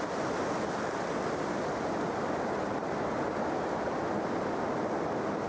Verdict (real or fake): real